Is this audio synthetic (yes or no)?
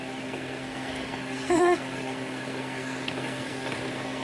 yes